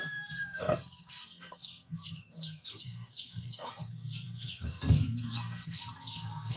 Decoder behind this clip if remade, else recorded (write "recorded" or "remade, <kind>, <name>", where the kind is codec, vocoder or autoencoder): remade, codec, SNAC